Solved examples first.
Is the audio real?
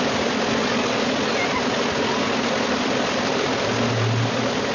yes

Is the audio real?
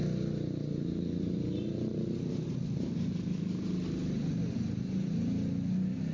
yes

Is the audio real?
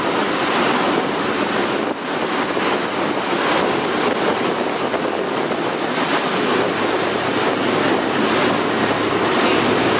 yes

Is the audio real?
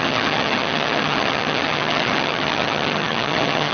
no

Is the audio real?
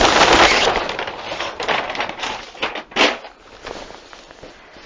yes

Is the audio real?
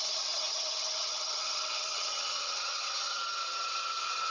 no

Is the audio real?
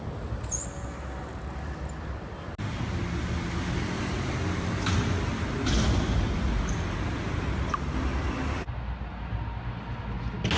yes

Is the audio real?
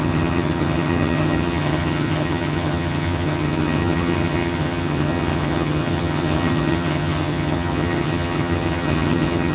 no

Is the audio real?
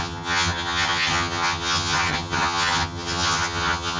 no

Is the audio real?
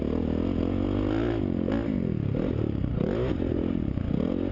yes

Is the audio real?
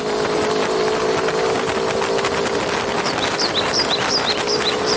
yes